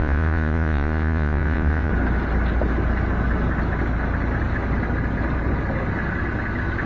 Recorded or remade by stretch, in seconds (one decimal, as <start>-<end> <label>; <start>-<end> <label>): 0.0-1.9 remade; 1.9-6.9 recorded